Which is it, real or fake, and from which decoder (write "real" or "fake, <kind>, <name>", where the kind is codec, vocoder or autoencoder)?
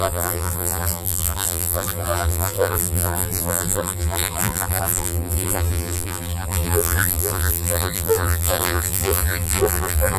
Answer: fake, vocoder, BigVGAN v2